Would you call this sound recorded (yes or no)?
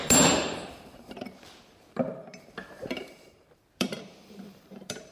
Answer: no